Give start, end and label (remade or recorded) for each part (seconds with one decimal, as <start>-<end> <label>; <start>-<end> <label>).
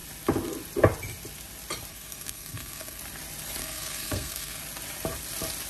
0.0-1.9 recorded; 1.9-3.0 remade; 3.0-3.6 recorded; 3.6-4.6 remade; 4.6-5.7 recorded